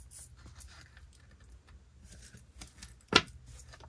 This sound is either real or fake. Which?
real